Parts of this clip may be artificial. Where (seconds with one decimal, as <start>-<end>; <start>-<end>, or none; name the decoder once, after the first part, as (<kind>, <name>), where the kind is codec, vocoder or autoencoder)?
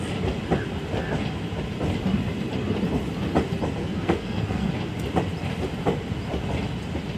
3.8-4.7 (codec, SNAC)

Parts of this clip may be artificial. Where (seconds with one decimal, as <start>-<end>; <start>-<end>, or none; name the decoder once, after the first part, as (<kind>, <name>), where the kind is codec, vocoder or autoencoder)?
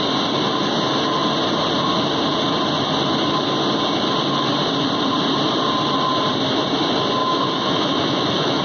7.2-8.6 (autoencoder, DAC-VAE)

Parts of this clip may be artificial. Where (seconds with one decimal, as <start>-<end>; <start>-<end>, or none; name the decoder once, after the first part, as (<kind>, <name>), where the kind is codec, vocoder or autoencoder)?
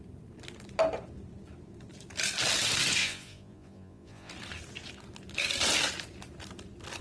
3.0-4.3 (vocoder, Vocos)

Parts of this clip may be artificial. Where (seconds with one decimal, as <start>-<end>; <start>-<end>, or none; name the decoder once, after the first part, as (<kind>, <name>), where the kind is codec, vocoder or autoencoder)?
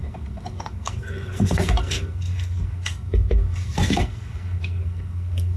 0.0-5.6 (codec, SNAC)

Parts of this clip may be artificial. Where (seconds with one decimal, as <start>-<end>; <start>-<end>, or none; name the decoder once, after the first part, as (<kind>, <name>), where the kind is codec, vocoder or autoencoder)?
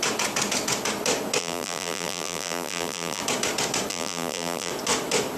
1.4-3.2 (vocoder, BigVGAN v2); 3.9-4.7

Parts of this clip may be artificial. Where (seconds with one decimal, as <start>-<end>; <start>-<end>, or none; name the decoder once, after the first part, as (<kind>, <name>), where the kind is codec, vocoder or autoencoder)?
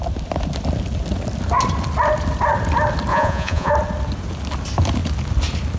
3.1-3.7 (vocoder, Vocos)